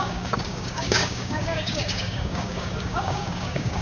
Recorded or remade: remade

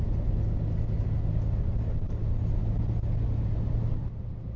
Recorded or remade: recorded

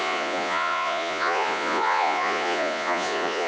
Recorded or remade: remade